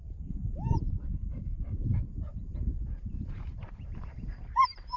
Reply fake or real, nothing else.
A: fake